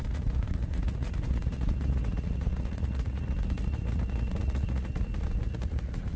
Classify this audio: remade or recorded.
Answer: remade